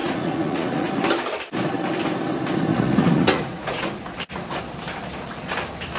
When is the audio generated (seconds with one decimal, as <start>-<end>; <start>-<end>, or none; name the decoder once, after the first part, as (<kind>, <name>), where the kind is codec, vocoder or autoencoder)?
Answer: 0.0-0.9 (vocoder, Vocos); 2.7-3.9